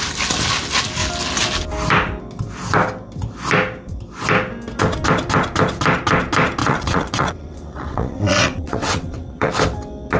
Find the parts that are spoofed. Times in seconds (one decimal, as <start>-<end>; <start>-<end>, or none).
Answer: 6.6-9.5